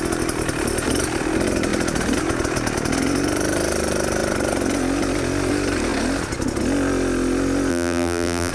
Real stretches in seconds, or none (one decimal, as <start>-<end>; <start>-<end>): 0.0-7.7